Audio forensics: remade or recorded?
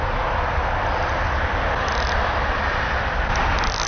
recorded